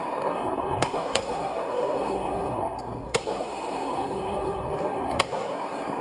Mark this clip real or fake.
fake